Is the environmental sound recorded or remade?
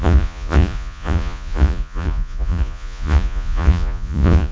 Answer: remade